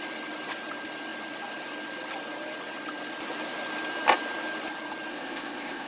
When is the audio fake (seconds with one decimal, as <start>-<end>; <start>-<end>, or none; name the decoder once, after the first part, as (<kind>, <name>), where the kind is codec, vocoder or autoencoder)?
5.1-5.9 (codec, ZipCodec)